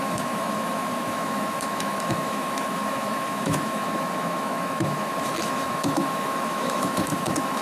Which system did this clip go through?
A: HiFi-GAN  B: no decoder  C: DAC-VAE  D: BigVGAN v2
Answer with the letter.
C